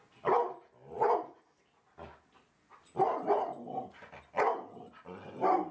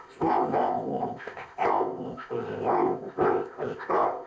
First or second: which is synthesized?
second